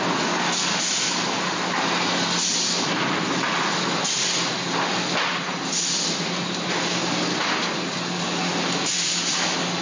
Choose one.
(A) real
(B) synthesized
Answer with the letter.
A